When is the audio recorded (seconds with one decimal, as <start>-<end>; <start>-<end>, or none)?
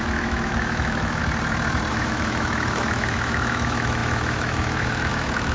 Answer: 1.2-1.9